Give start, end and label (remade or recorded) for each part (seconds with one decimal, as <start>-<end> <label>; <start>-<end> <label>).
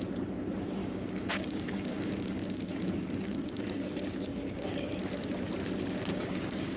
0.0-0.8 recorded; 0.8-3.9 remade; 3.9-4.3 recorded; 4.3-5.0 remade; 5.0-6.1 recorded; 6.1-6.8 remade